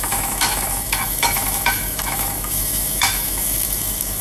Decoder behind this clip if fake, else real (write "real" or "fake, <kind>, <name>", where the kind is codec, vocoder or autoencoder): fake, autoencoder, DAC-VAE